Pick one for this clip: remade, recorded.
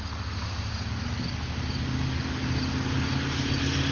recorded